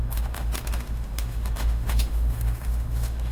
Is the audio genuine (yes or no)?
no